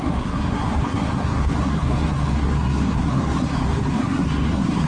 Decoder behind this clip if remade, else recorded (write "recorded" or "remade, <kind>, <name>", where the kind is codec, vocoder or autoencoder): remade, codec, SNAC